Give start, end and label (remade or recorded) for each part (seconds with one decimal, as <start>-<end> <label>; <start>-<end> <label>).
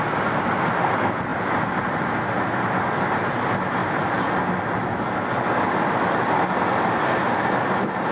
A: 0.0-8.1 recorded